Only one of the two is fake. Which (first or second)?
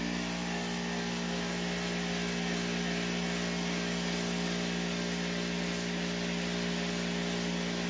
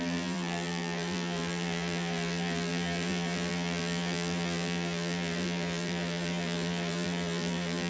second